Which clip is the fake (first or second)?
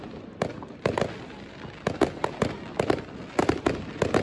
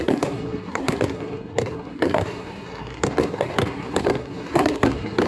second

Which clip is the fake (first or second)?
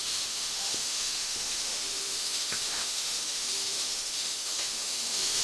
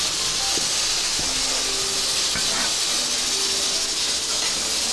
first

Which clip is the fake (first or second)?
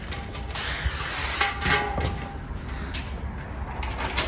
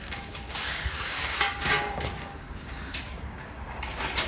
second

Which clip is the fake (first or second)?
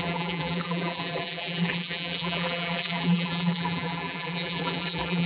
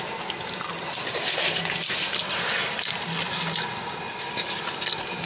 first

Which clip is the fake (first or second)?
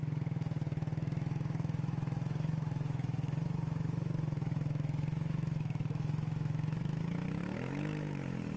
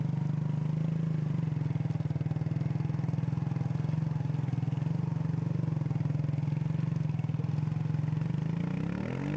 first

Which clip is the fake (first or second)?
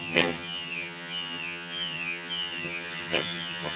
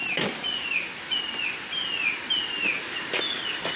first